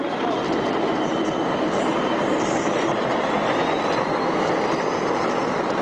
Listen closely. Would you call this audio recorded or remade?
recorded